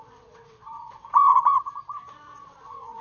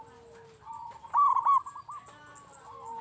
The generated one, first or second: first